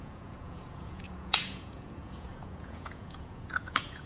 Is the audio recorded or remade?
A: remade